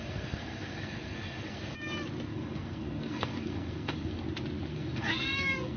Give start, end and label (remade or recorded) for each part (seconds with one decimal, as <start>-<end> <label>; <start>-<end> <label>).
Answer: 0.0-1.6 remade; 1.6-2.3 recorded; 2.3-4.2 remade; 4.2-4.7 recorded; 4.7-5.8 remade